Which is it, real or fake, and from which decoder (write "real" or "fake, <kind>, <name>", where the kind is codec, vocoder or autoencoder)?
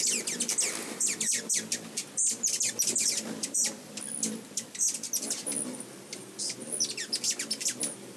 real